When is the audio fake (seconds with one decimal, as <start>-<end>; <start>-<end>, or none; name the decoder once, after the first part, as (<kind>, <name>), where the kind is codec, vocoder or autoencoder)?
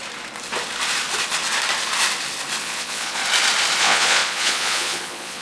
2.6-3.2 (vocoder, Vocos); 3.8-5.4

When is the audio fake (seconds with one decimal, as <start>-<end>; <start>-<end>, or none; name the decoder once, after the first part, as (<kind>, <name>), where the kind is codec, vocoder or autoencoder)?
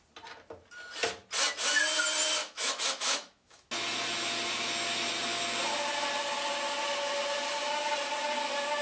2.4-3.7 (autoencoder, DAC-VAE)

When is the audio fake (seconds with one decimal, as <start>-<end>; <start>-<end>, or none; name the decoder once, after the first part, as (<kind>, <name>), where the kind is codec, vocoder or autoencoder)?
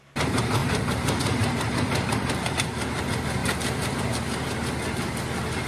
0.6-3.0 (vocoder, BigVGAN v2)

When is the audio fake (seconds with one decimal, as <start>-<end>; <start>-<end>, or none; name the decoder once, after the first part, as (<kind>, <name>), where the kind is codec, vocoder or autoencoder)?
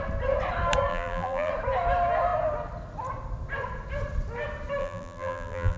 0.9-1.5 (vocoder, BigVGAN v2); 4.8-5.8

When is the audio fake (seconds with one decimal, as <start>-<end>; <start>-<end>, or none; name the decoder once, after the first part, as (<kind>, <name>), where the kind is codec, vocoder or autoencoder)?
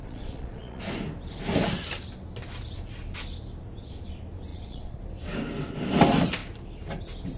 0.0-0.8 (vocoder, Vocos); 4.5-5.0